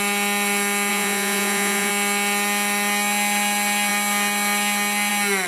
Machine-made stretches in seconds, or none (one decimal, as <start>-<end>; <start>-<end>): 0.9-1.9